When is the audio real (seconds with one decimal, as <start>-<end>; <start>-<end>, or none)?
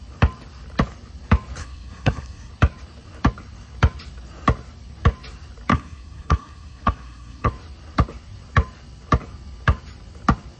0.0-1.6; 2.5-5.7; 7.5-10.6